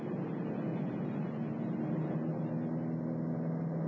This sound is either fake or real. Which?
real